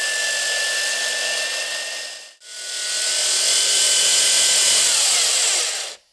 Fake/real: real